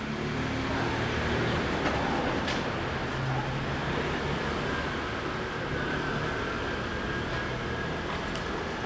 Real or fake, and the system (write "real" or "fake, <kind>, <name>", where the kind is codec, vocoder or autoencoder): real